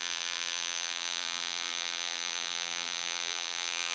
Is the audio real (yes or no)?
no